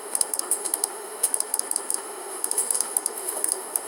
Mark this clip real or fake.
fake